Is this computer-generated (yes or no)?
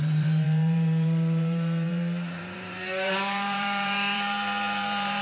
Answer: yes